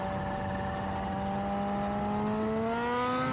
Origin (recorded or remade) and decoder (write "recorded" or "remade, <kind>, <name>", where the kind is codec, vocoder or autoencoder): recorded